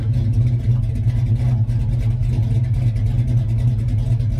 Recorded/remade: recorded